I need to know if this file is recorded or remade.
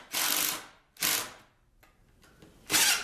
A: recorded